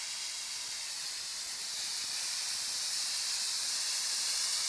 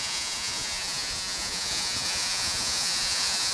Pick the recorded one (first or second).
first